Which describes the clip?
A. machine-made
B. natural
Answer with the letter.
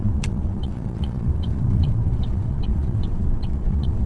A